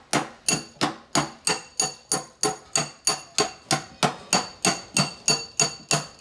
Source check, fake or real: real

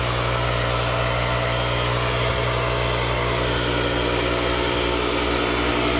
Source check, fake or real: real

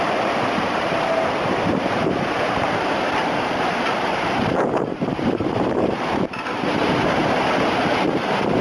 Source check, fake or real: fake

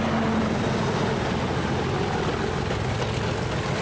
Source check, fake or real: real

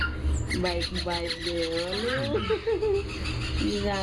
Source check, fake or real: real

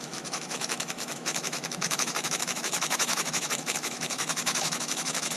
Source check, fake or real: fake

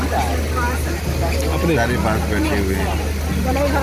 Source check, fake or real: real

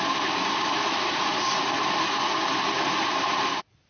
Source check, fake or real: real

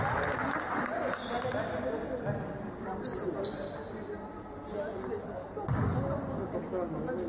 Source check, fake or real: real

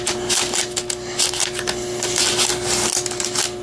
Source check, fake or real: real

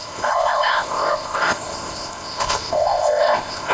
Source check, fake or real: fake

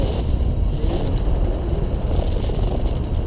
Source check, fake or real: real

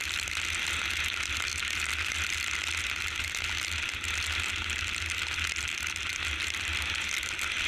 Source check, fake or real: real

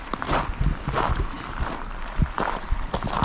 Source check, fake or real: real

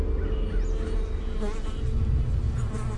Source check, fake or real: real